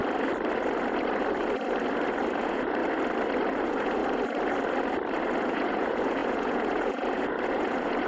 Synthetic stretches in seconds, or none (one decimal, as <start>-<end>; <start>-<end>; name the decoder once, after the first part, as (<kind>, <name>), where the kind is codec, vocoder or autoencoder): 2.4-2.8 (vocoder, Vocos); 3.6-4.0; 5.4-8.1